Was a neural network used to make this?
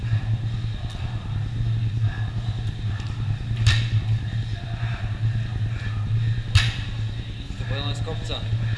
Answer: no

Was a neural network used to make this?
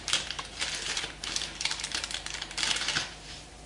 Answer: yes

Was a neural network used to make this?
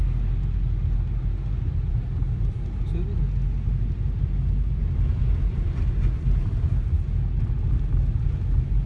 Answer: no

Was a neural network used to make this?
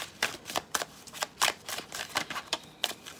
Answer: yes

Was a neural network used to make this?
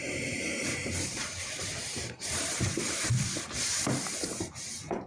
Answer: yes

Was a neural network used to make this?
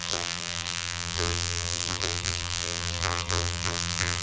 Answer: yes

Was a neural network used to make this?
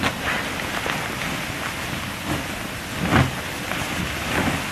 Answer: no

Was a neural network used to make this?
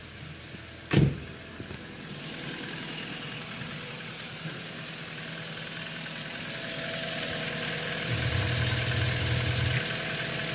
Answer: no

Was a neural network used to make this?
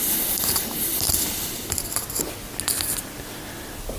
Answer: no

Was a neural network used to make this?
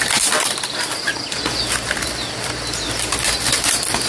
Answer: yes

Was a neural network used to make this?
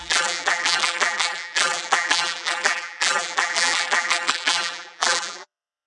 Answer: yes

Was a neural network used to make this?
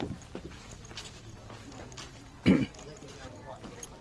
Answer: no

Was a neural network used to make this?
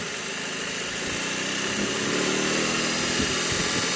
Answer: no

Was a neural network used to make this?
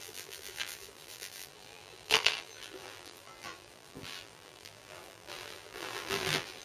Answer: yes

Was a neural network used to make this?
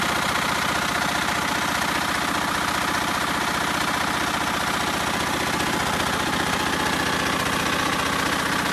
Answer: no